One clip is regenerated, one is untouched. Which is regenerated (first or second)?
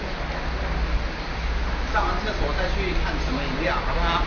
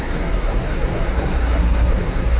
second